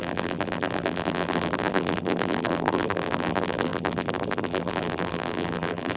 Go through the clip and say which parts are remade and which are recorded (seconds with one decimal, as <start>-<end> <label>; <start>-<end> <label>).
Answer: 0.0-6.0 remade